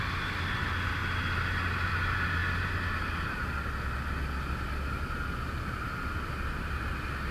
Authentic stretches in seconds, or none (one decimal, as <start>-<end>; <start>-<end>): 0.0-7.3